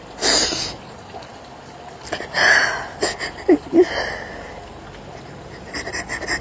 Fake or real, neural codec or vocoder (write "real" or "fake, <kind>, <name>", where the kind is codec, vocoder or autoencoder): real